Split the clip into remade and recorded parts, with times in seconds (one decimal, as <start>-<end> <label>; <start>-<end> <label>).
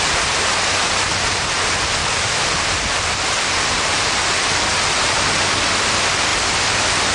0.0-7.1 recorded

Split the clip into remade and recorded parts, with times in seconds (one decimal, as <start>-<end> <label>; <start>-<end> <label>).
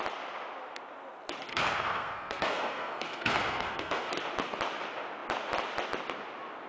0.0-1.5 recorded; 1.5-4.1 remade; 4.1-6.7 recorded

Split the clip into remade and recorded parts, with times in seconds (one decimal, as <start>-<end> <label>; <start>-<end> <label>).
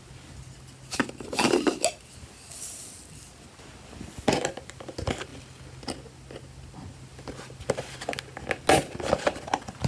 0.0-9.9 recorded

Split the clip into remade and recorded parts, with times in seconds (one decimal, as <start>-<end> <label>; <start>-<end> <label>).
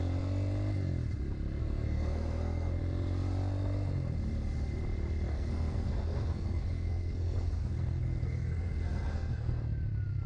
0.0-1.6 recorded; 1.6-2.8 remade; 2.8-5.3 recorded; 5.3-9.6 remade; 9.6-10.3 recorded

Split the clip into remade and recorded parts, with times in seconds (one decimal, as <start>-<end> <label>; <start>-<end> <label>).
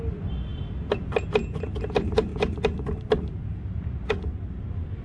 0.0-5.0 recorded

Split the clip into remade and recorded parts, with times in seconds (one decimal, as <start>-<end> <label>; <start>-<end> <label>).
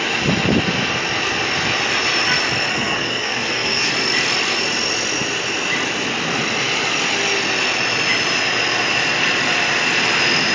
0.0-2.7 recorded; 2.7-3.9 remade; 3.9-10.5 recorded